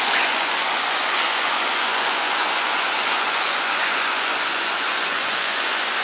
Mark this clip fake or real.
fake